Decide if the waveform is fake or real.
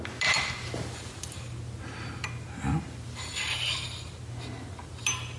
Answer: real